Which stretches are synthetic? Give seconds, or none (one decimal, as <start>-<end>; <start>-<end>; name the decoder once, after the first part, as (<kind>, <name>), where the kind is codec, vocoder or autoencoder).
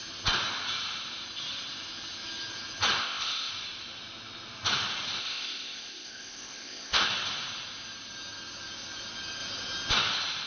3.0-3.5 (codec, ZipCodec); 5.2-7.1